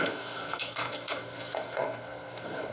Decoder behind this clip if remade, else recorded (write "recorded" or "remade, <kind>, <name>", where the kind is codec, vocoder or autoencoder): remade, codec, SNAC